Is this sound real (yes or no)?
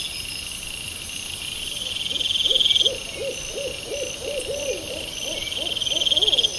yes